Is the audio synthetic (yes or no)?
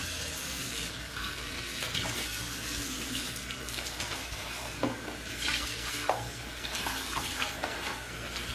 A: yes